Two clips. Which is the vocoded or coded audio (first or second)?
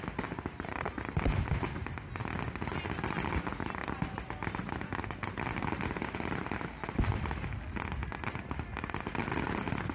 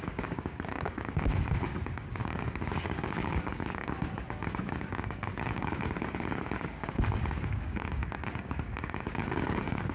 second